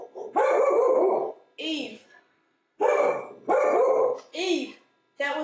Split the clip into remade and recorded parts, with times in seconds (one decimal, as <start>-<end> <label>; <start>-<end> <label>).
0.0-1.9 recorded; 1.9-3.0 remade; 3.0-5.4 recorded